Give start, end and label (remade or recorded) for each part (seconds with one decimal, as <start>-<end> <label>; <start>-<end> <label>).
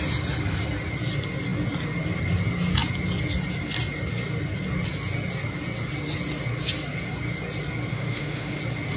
0.0-7.9 recorded; 7.9-8.6 remade; 8.6-9.0 recorded